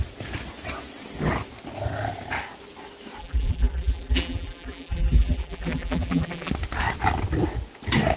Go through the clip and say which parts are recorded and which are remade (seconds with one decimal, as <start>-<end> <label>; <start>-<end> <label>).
0.0-3.2 recorded; 3.2-6.5 remade; 6.5-8.2 recorded